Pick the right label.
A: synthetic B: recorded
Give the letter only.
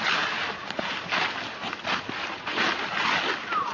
B